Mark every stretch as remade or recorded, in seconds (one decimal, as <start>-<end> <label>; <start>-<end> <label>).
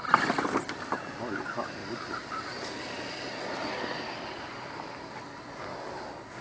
0.0-6.4 recorded